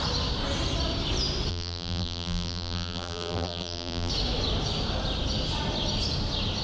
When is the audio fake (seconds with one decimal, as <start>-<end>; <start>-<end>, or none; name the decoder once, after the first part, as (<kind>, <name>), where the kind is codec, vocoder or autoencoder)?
1.5-4.1 (vocoder, BigVGAN v2)